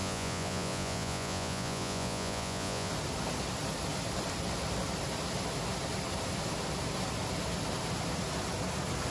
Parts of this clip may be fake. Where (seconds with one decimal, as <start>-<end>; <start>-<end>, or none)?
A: 0.0-2.9